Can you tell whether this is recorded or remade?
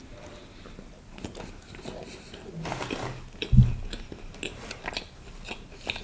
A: recorded